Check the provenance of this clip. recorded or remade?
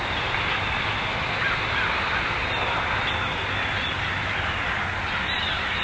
recorded